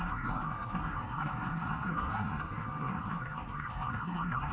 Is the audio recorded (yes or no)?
no